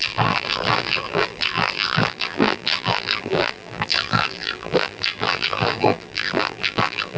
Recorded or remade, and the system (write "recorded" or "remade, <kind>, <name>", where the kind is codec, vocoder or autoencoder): remade, vocoder, BigVGAN v2